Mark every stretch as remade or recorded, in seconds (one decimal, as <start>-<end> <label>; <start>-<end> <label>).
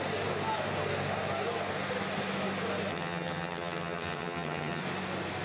0.0-2.9 recorded; 2.9-4.8 remade; 4.8-5.4 recorded